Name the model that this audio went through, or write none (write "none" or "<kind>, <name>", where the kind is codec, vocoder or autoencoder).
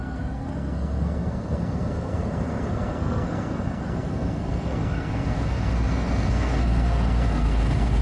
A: codec, SNAC